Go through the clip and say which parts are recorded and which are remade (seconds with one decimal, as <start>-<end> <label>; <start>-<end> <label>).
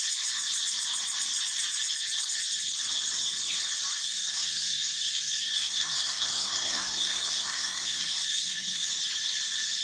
0.0-4.0 recorded; 4.0-8.9 remade; 8.9-9.8 recorded